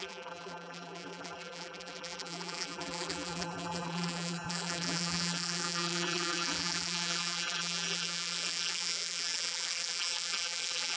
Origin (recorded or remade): remade